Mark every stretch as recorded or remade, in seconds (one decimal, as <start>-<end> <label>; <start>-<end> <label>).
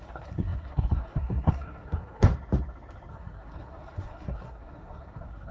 0.0-2.3 remade; 2.3-3.1 recorded; 3.1-5.5 remade